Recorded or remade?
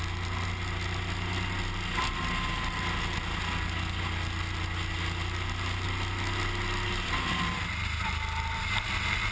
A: recorded